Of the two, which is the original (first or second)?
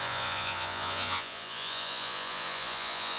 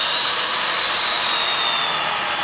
second